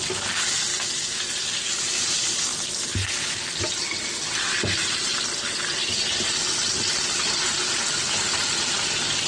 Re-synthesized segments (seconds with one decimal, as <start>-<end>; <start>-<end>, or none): none